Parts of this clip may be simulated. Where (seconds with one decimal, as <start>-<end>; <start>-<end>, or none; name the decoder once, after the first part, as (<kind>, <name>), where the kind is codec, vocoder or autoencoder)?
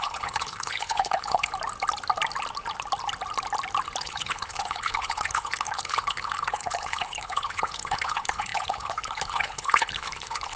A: 0.0-1.5 (codec, HILCodec); 4.0-10.6